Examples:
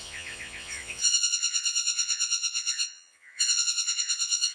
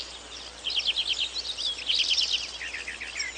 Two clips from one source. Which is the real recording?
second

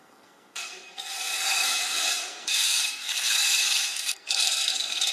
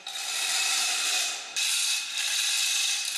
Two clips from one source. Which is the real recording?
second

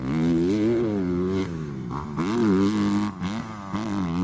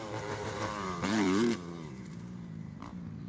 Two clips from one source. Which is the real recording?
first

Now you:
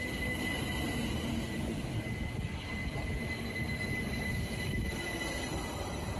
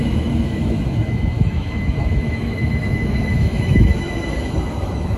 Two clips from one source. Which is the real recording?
first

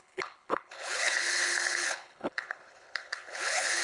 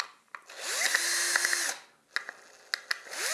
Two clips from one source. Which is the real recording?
second